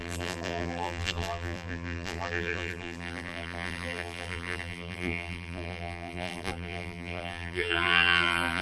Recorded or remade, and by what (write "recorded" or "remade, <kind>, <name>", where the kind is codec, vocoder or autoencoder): remade, vocoder, BigVGAN v2